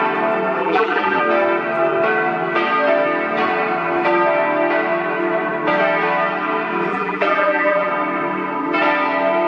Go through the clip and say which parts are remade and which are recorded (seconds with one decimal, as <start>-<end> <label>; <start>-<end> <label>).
0.0-0.6 recorded; 0.6-1.2 remade; 1.2-6.9 recorded; 6.9-7.9 remade; 7.9-9.5 recorded

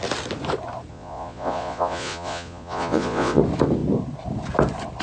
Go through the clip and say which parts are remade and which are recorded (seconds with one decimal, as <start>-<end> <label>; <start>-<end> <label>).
0.0-0.9 recorded; 0.9-3.4 remade; 3.4-5.0 recorded

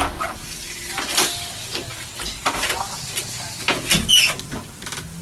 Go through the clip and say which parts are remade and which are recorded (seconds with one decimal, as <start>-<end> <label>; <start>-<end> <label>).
0.0-5.2 recorded

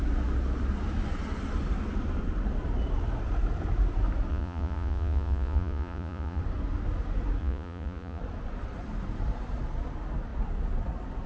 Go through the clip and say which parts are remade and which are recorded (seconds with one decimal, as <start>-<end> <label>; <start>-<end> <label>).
0.0-4.3 recorded; 4.3-6.4 remade; 6.4-7.4 recorded; 7.4-8.2 remade; 8.2-11.3 recorded

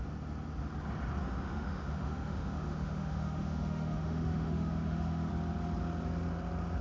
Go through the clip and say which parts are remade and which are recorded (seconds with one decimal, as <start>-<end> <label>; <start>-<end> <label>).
0.0-1.2 recorded; 1.2-5.3 remade; 5.3-6.8 recorded

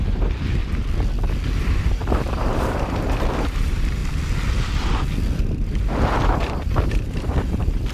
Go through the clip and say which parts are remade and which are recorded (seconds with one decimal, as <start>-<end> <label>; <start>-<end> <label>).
0.0-0.6 remade; 0.6-1.5 recorded; 1.5-4.0 remade; 4.0-5.4 recorded; 5.4-7.9 remade